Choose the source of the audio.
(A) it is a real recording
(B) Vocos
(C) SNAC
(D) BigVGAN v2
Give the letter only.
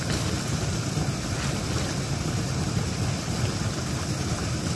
A